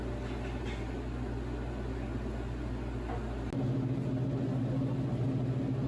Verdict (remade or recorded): recorded